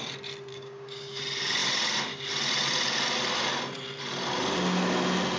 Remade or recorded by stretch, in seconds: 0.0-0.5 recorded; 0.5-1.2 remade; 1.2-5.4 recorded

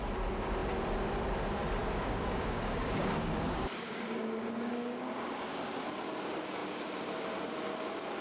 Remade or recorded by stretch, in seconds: 0.0-1.8 recorded; 1.8-5.7 remade; 5.7-8.2 recorded

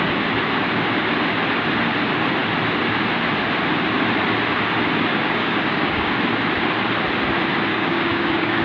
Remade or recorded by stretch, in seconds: 0.0-5.1 recorded; 5.1-6.1 remade; 6.1-7.7 recorded; 7.7-8.6 remade

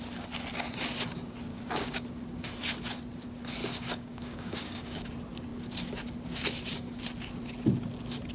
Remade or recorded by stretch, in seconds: 0.0-1.5 recorded; 1.5-2.0 remade; 2.0-3.6 recorded; 3.6-5.1 remade; 5.1-8.3 recorded

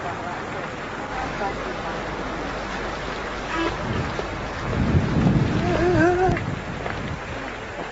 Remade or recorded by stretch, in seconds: 0.0-1.2 recorded; 1.2-2.2 remade; 2.2-3.2 recorded; 3.2-3.9 remade; 3.9-7.9 recorded

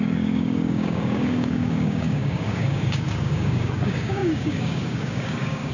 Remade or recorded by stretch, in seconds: 0.0-5.7 remade

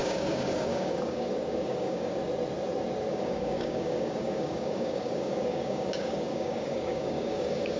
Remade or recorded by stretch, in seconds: 0.0-2.2 remade; 2.2-3.1 recorded; 3.1-7.8 remade

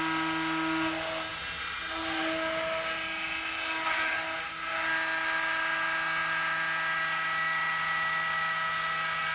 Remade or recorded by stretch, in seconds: 0.0-9.3 recorded